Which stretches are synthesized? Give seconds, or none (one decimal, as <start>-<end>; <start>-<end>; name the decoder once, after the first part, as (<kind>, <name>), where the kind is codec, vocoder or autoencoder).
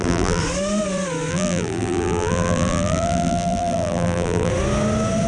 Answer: 0.0-0.4 (vocoder, BigVGAN v2); 1.3-4.5